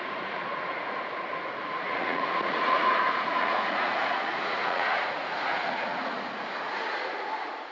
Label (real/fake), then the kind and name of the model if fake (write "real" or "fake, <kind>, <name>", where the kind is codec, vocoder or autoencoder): fake, vocoder, Vocos